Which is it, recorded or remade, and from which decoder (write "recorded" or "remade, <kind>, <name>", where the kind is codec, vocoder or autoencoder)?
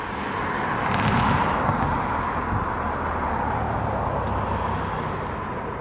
recorded